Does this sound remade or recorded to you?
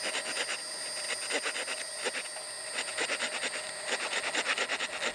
recorded